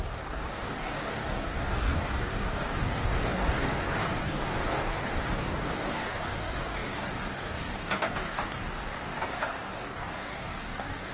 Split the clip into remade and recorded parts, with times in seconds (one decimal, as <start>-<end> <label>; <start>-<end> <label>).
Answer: 0.0-11.1 remade